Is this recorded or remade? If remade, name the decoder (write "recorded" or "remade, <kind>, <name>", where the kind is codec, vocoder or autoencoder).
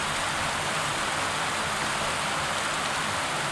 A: recorded